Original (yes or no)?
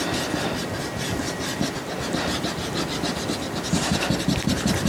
yes